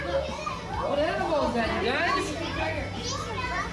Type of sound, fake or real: real